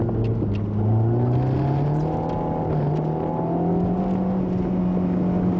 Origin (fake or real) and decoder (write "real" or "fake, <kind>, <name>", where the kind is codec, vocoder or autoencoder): real